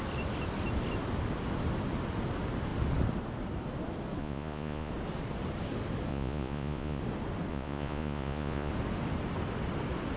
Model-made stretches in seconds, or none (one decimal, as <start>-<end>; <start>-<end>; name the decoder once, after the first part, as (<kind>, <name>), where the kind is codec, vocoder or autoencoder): 4.2-4.9 (vocoder, Vocos); 6.1-7.0; 7.5-8.7